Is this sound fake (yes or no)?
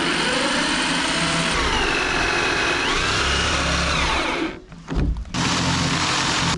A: no